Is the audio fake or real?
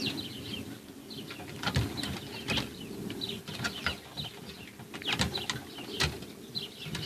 real